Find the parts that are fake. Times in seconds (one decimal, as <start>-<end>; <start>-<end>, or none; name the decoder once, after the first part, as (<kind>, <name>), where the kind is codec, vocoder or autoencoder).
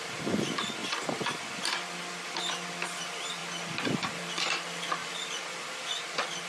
3.4-4.1 (vocoder, BigVGAN v2); 5.0-6.5